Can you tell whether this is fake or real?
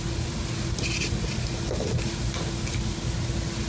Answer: real